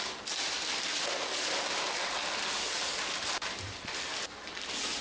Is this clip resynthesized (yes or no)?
no